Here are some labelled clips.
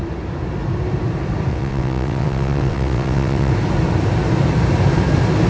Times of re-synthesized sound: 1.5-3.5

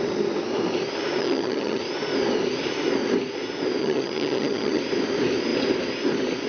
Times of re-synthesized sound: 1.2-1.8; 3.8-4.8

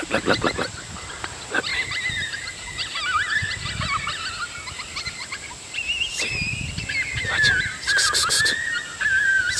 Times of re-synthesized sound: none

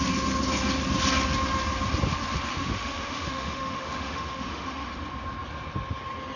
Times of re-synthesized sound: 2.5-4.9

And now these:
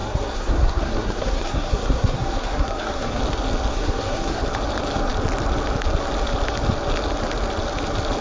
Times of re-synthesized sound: 0.0-3.2; 3.7-4.4

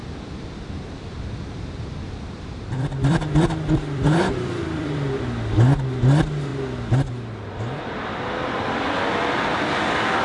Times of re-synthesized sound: 0.0-5.2; 6.5-7.1

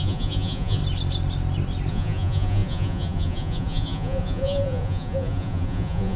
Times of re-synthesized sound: 0.0-0.8; 1.9-6.2

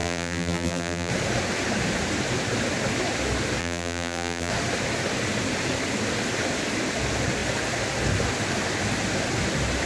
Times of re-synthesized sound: 0.0-1.1; 3.6-4.5